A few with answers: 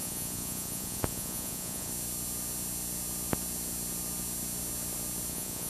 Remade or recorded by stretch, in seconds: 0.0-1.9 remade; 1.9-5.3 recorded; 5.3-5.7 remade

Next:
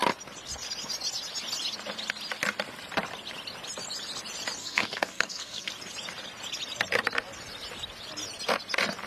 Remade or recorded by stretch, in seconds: 0.0-4.6 recorded; 4.6-5.7 remade; 5.7-9.1 recorded

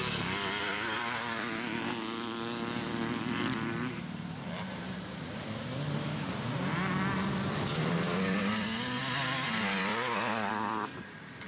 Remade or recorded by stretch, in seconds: 0.0-0.6 recorded; 0.6-9.9 remade; 9.9-10.5 recorded; 10.5-11.5 remade

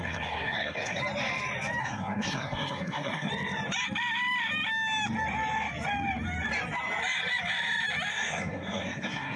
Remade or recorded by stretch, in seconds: 0.0-1.0 remade; 1.0-1.8 recorded; 1.8-3.3 remade; 3.3-8.1 recorded; 8.1-9.4 remade

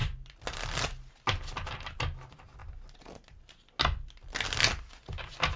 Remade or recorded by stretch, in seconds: 0.0-5.6 recorded

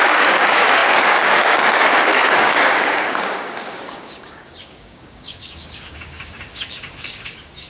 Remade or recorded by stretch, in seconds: 0.0-7.7 remade

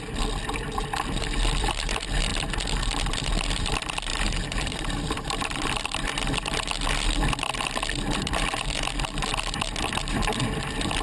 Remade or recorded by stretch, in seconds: 0.0-2.3 remade; 2.3-3.1 recorded; 3.1-6.1 remade; 6.1-8.2 recorded; 8.2-9.3 remade; 9.3-10.4 recorded; 10.4-11.0 remade

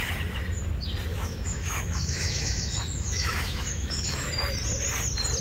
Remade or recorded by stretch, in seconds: 0.0-1.1 recorded; 1.1-4.3 remade; 4.3-5.4 recorded